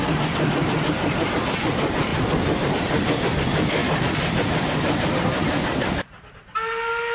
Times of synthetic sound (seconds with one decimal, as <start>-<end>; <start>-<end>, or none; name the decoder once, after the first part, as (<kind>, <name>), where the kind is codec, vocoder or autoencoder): 0.6-1.4 (vocoder, BigVGAN v2); 3.8-6.3